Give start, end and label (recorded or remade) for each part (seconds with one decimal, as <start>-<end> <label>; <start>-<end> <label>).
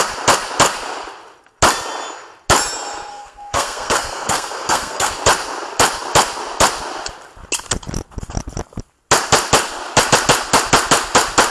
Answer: 0.0-3.1 recorded; 3.1-5.1 remade; 5.1-11.5 recorded